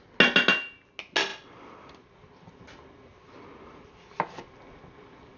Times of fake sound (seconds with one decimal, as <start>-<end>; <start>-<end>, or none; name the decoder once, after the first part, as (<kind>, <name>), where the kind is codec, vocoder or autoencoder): none